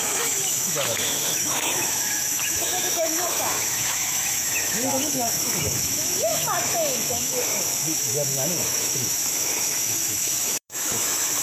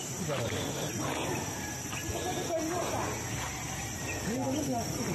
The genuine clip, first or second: second